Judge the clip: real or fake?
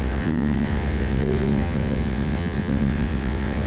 fake